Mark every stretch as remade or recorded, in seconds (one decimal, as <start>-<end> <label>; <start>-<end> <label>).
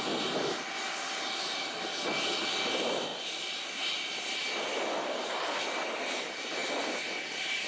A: 0.0-7.7 recorded